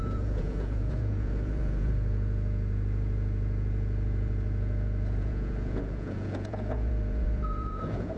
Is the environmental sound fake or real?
fake